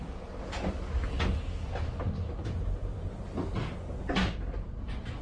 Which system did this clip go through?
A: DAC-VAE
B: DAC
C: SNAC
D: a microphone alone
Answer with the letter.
D